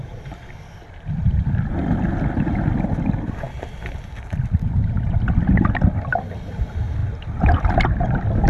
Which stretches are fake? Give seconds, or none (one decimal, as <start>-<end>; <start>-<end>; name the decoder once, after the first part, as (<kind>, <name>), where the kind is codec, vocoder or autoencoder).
none

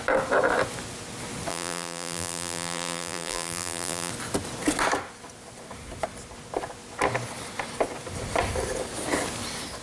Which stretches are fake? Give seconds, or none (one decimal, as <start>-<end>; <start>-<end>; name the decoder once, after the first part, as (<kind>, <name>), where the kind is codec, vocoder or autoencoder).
1.5-4.1 (vocoder, BigVGAN v2)

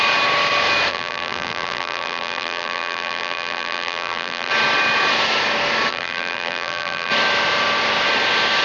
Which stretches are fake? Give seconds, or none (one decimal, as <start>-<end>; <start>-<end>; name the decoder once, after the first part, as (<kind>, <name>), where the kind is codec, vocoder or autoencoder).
0.9-4.5 (vocoder, BigVGAN v2); 5.9-7.1

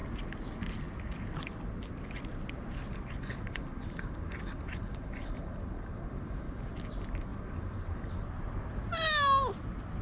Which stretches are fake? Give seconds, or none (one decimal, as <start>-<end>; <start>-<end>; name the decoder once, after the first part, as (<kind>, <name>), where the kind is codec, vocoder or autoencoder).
3.2-6.7 (vocoder, BigVGAN v2); 7.3-8.2

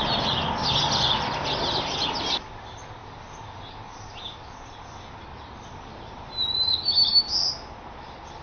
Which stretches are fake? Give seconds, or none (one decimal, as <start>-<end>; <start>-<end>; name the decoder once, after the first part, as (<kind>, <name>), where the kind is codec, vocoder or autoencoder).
none

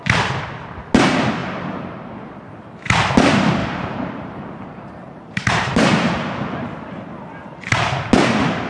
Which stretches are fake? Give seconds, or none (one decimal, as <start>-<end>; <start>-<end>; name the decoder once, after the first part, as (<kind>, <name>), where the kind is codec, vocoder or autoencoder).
1.4-2.1 (vocoder, BigVGAN v2); 3.6-7.0